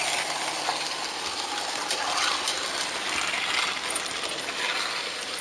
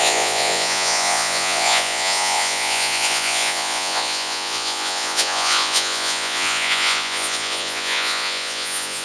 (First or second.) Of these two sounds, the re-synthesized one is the second